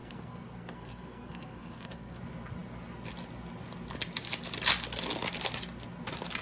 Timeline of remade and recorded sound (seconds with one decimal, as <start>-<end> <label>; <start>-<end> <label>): 0.0-2.2 remade; 2.2-6.4 recorded